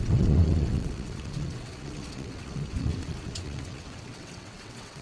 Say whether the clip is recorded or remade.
remade